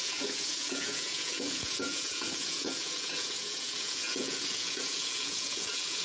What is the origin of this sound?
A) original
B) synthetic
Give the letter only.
B